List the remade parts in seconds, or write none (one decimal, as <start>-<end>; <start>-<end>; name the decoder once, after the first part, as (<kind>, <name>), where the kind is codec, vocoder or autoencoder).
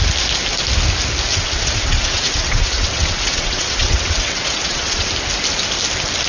1.3-5.1 (vocoder, WaveNeXt)